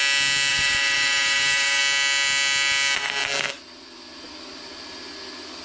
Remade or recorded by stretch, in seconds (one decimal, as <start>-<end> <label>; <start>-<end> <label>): 0.0-0.5 recorded; 0.5-1.8 remade; 1.8-5.6 recorded